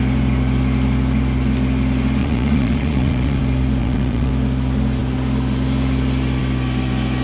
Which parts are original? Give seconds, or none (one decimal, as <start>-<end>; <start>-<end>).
0.0-2.2; 3.4-3.8; 4.3-7.2